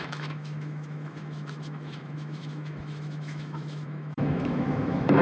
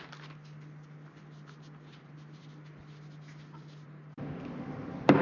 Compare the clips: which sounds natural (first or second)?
second